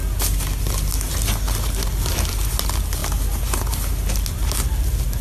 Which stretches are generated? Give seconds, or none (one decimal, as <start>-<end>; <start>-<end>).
none